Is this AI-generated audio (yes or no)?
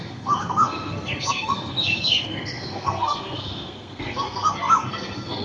yes